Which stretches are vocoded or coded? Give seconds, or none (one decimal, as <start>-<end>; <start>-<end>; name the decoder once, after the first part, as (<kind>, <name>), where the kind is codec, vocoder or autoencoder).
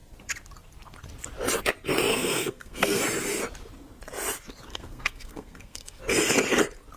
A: 2.1-3.0 (codec, SNAC); 4.7-6.0